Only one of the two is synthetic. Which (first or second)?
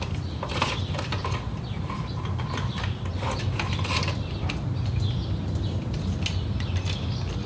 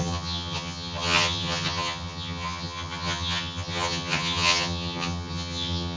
second